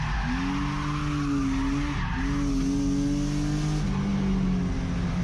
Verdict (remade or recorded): recorded